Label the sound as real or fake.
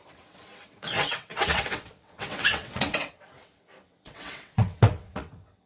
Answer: fake